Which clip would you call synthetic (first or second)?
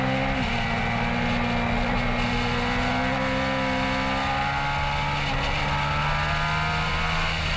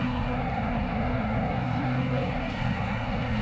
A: second